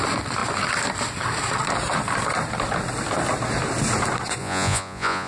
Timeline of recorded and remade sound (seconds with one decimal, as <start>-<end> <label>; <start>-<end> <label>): 0.0-4.4 recorded; 4.4-5.3 remade